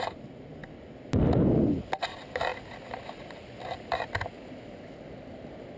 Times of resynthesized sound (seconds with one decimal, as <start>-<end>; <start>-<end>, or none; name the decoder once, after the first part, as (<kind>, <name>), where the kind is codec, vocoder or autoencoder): none